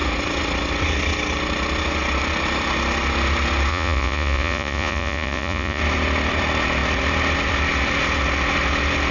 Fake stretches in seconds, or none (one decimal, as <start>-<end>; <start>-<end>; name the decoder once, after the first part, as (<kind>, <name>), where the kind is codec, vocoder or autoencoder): 3.7-5.8 (vocoder, Vocos)

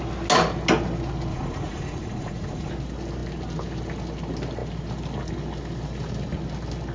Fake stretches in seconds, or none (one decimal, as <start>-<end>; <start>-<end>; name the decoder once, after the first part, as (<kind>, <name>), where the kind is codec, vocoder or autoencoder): 1.3-2.7 (vocoder, Vocos)

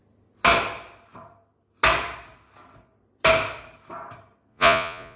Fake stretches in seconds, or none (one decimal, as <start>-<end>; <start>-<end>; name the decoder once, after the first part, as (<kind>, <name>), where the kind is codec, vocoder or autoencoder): 4.5-5.2 (vocoder, Vocos)

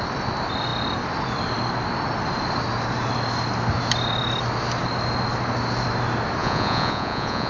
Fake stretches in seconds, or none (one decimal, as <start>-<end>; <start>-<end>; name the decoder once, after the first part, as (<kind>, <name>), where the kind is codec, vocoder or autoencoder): 6.4-7.5 (vocoder, Vocos)